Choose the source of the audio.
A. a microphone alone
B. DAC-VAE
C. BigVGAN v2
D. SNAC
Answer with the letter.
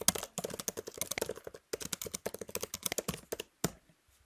A